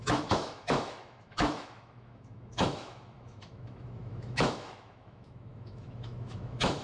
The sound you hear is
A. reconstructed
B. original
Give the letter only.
A